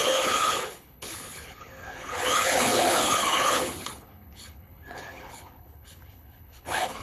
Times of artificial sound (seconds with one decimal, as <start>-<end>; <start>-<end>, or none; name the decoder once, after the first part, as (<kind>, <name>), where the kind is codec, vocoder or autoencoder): 0.0-7.0 (codec, HILCodec)